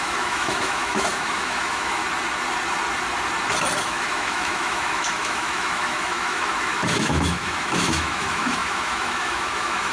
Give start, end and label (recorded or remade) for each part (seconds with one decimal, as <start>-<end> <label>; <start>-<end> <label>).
0.0-2.0 remade; 2.0-3.8 recorded; 3.8-9.9 remade